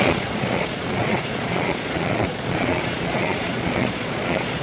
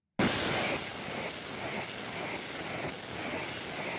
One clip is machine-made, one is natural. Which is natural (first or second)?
second